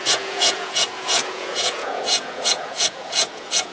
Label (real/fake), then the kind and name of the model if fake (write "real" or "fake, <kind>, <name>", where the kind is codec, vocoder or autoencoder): fake, vocoder, Vocos